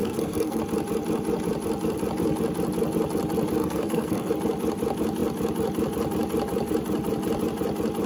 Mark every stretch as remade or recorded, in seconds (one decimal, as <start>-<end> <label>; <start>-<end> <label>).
0.0-0.6 remade; 0.6-3.6 recorded; 3.6-4.3 remade; 4.3-8.1 recorded